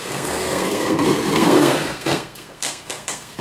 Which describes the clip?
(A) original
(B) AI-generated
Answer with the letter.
B